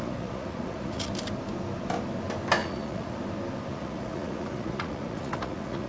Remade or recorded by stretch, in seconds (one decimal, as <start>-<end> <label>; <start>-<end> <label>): 0.0-1.1 remade; 1.1-2.6 recorded; 2.6-3.2 remade; 3.2-3.7 recorded; 3.7-5.9 remade